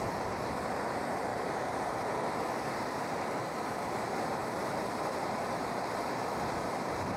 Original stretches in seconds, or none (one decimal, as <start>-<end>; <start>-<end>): none